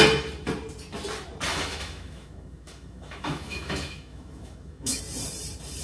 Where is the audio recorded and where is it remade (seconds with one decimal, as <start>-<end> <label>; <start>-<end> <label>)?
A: 0.0-1.5 recorded; 1.5-5.0 remade; 5.0-5.8 recorded